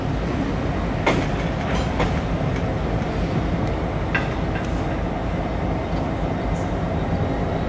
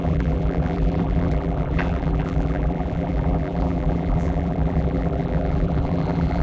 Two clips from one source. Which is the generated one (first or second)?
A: second